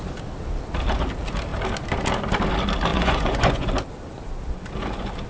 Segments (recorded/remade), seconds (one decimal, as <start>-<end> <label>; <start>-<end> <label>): 0.0-2.9 recorded; 2.9-3.7 remade; 3.7-5.3 recorded